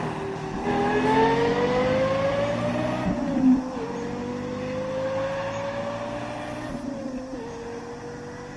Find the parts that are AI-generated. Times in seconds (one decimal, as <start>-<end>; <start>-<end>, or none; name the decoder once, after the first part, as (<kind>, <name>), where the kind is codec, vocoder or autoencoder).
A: none